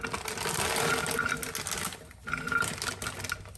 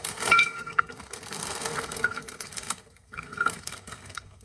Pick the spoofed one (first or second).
second